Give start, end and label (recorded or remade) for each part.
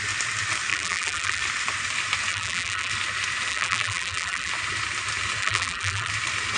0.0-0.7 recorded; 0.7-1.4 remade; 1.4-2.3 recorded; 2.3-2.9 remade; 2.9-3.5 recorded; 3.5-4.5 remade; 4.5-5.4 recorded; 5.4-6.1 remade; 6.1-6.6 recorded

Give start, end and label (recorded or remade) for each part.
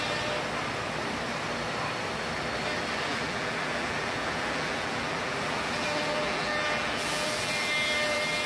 0.0-3.1 recorded; 3.1-8.5 remade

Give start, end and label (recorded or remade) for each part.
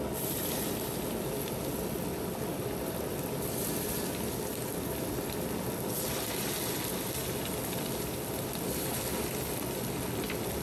0.0-10.6 recorded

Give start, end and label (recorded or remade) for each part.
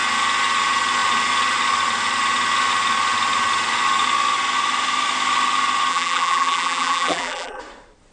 0.0-5.9 recorded; 5.9-7.6 remade; 7.6-8.1 recorded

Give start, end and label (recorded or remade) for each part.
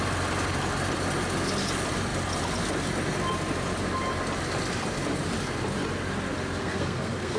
0.0-6.6 recorded; 6.6-7.4 remade